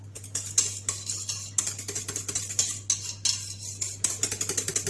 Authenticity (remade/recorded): recorded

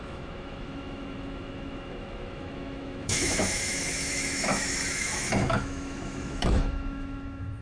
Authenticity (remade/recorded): remade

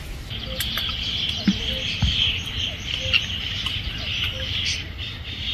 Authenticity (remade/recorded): recorded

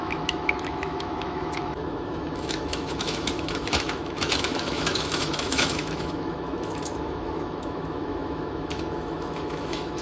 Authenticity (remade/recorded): remade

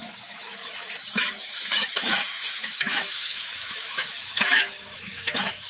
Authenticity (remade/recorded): remade